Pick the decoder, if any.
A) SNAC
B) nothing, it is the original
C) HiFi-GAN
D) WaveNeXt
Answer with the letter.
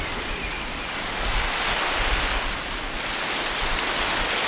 B